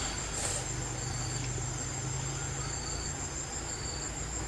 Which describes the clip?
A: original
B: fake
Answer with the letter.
A